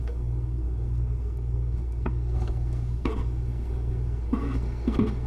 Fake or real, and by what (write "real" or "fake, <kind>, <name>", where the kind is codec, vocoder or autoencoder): fake, codec, SNAC